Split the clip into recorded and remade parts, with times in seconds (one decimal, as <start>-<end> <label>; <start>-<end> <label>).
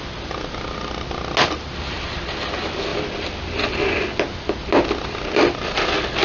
0.0-6.2 recorded